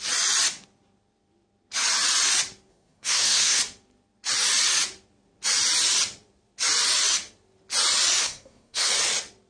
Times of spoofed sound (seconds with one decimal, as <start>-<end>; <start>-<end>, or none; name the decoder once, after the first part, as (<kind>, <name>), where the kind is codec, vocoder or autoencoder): 2.7-3.6 (codec, SNAC); 8.2-8.9